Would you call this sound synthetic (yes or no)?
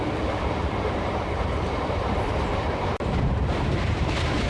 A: yes